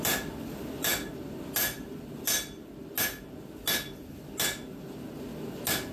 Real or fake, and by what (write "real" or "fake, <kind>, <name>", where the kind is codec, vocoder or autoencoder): real